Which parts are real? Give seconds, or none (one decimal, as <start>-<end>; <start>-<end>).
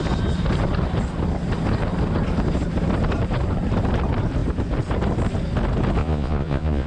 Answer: 0.0-6.0